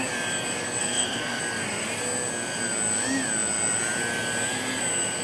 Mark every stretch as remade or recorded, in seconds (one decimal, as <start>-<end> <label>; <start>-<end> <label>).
0.0-0.8 recorded; 0.8-1.4 remade; 1.4-5.2 recorded